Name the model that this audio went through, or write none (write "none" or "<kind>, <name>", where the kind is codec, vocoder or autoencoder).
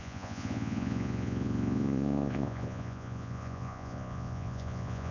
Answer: vocoder, Vocos